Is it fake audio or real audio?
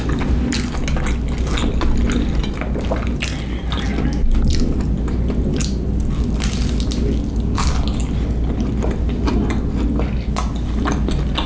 real